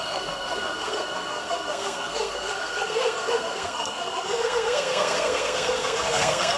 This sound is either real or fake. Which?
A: fake